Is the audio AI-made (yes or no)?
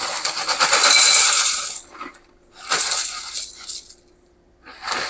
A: no